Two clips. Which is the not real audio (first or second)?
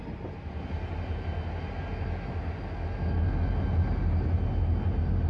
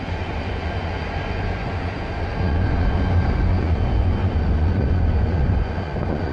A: second